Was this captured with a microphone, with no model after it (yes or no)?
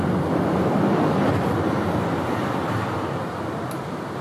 yes